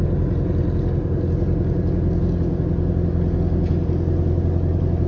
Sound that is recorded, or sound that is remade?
recorded